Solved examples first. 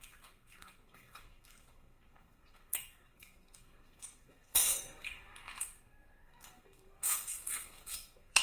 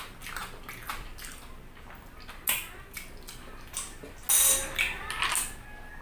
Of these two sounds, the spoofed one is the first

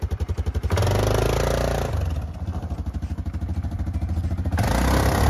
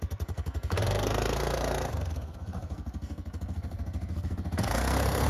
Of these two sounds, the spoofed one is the second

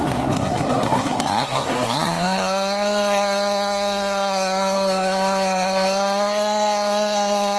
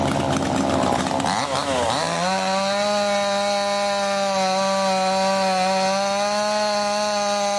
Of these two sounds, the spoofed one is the first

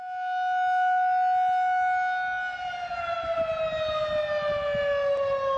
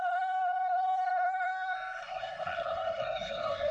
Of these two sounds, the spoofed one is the second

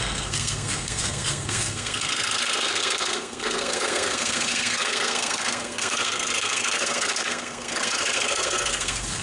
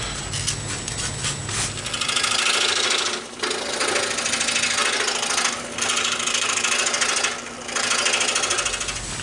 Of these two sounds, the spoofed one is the first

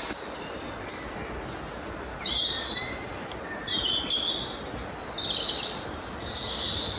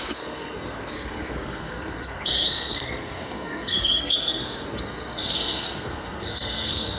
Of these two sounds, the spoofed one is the second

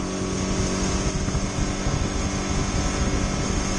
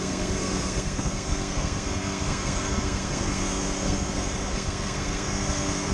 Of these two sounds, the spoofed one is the second